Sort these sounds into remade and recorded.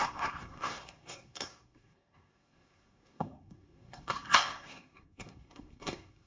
remade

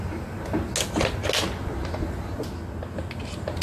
recorded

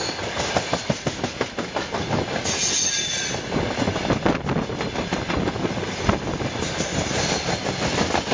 recorded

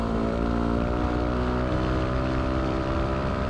remade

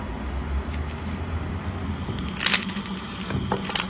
recorded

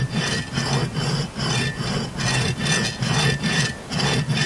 recorded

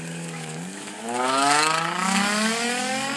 remade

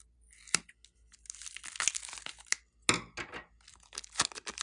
recorded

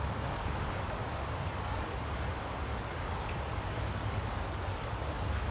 remade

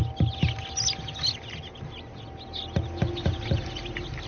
recorded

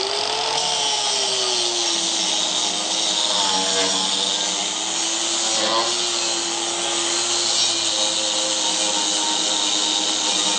recorded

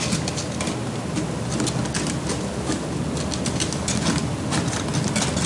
recorded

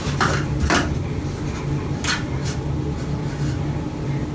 recorded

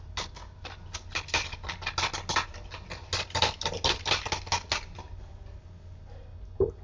recorded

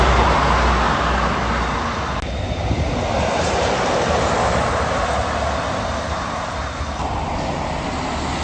recorded